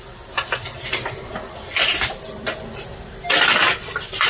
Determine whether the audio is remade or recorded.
recorded